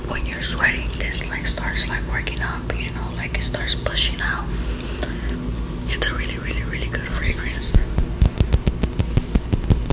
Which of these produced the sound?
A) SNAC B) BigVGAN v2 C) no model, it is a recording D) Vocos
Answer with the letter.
C